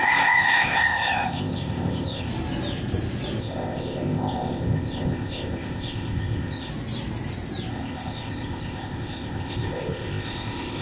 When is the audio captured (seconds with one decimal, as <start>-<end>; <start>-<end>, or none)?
2.3-3.4; 6.7-7.7